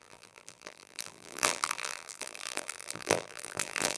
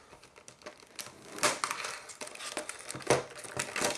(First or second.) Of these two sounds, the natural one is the second